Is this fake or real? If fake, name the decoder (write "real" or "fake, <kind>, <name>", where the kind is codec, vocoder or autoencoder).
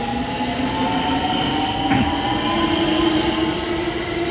real